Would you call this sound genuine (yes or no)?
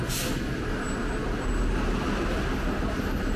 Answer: yes